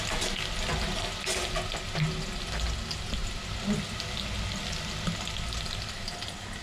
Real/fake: real